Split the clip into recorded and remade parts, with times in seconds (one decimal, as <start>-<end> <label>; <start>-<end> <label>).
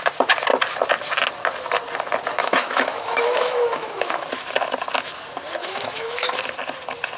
0.0-2.4 recorded; 2.4-4.3 remade; 4.3-5.6 recorded; 5.6-6.4 remade; 6.4-7.2 recorded